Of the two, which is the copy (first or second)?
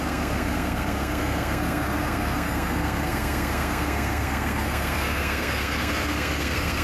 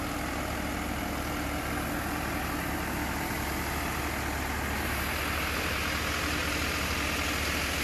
first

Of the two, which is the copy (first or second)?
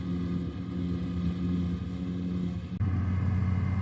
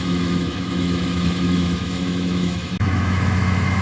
second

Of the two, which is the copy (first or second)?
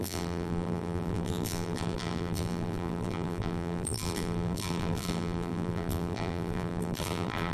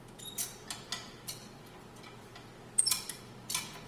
first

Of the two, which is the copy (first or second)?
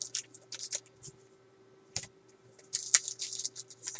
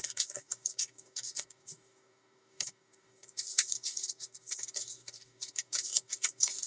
second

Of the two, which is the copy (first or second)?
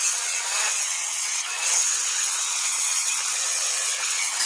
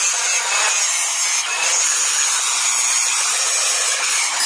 first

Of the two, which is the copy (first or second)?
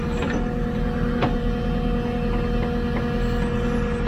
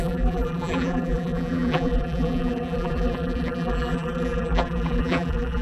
second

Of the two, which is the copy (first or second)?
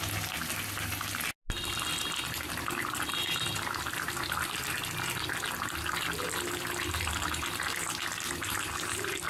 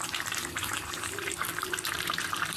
second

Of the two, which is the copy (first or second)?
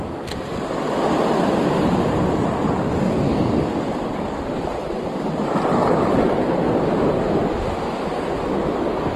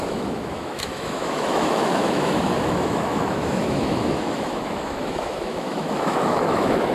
second